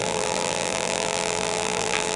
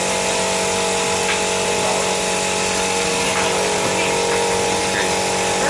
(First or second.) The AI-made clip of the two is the first